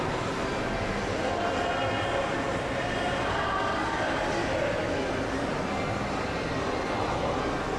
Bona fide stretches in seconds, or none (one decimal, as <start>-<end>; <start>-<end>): 0.0-7.8